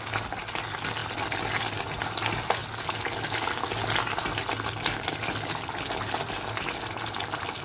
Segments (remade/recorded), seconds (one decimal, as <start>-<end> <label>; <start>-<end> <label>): 0.0-7.6 recorded